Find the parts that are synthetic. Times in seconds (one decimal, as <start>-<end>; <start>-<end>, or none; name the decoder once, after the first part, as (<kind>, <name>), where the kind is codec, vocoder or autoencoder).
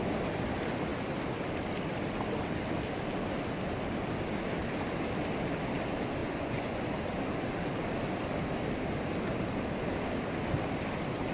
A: 6.2-6.8 (vocoder, Vocos)